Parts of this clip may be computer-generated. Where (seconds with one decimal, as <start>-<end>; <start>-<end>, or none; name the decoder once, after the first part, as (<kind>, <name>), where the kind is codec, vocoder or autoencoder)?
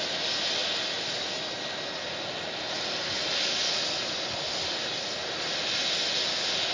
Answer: none